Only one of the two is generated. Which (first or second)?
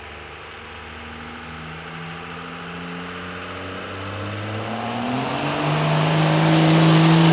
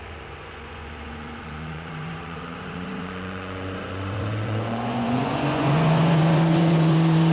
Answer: second